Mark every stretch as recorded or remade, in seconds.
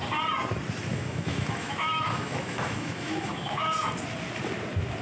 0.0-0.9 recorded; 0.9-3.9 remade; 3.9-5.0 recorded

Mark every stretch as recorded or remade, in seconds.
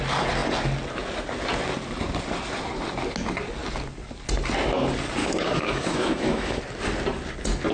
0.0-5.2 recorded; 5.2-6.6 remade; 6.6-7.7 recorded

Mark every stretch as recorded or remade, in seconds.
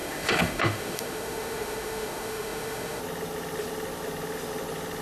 0.0-3.0 remade; 3.0-5.0 recorded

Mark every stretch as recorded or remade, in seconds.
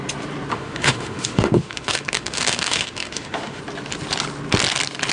0.0-0.5 recorded; 0.5-3.6 remade; 3.6-5.1 recorded